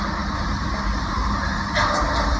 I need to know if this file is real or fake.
real